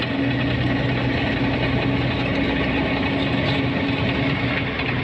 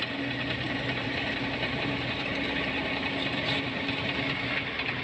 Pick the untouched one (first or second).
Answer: first